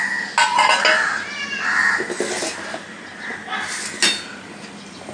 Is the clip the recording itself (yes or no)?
yes